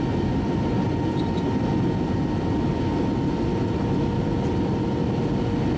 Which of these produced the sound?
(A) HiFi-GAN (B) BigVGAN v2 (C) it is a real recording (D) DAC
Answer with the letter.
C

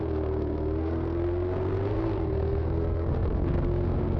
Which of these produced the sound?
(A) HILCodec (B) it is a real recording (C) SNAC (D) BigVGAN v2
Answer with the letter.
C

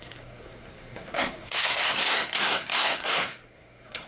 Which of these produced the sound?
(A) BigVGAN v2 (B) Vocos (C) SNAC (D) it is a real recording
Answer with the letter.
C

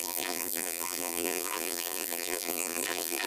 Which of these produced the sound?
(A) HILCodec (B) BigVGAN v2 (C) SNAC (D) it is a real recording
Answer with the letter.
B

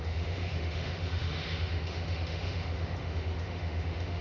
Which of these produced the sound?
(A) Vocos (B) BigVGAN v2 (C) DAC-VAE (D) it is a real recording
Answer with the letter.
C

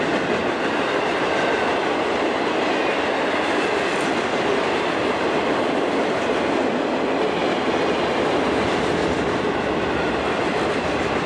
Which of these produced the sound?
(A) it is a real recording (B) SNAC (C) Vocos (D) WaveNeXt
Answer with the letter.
A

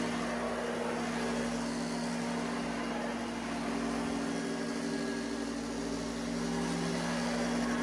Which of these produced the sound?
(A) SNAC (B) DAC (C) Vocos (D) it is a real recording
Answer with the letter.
D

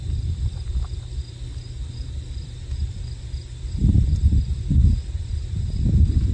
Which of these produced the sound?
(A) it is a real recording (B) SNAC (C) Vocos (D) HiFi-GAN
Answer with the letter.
A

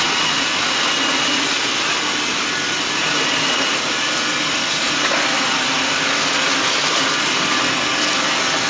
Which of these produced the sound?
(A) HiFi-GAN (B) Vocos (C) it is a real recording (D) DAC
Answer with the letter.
C